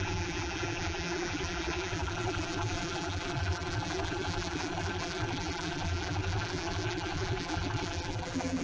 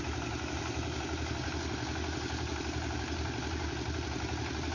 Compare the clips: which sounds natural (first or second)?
second